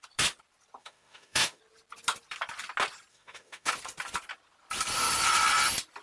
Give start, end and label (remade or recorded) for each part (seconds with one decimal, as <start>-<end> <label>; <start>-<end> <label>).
0.0-0.8 recorded; 0.8-1.6 remade; 1.6-3.1 recorded; 3.1-3.7 remade; 3.7-6.0 recorded